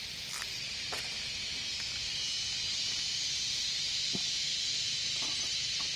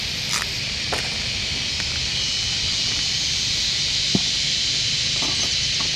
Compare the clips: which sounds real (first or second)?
first